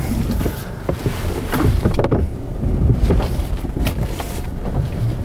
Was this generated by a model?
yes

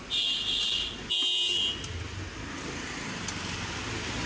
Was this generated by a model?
no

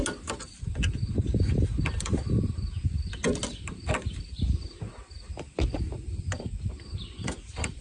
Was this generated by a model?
no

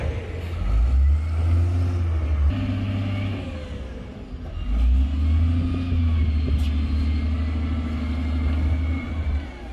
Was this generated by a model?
no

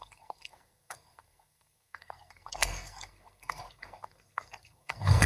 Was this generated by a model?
yes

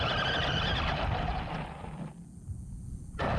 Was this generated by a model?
no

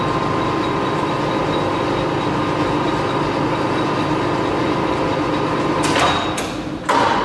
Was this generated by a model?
no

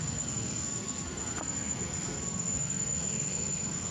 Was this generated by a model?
yes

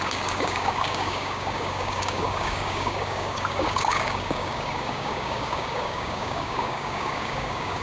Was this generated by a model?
yes